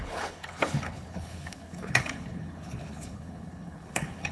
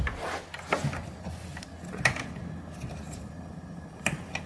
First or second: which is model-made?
first